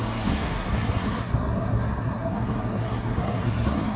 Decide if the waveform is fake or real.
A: fake